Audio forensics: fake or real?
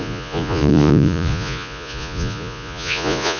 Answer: fake